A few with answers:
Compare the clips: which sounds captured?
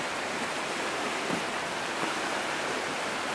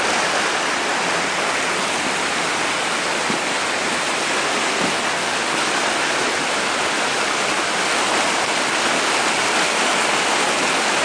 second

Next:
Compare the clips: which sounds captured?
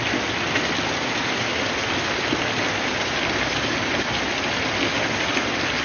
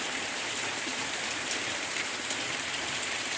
first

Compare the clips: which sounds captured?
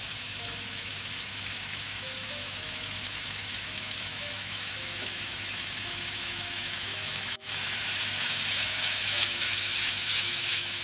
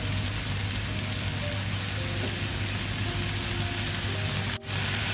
second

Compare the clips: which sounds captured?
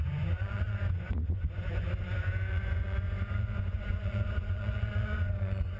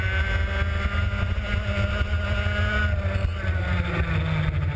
second